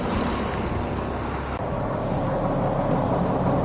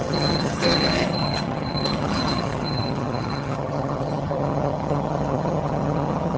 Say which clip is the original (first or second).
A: first